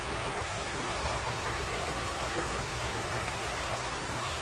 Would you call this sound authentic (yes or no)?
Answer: no